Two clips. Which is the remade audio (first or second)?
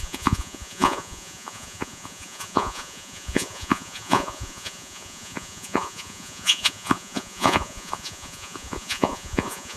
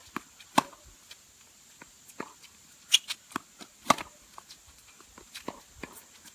first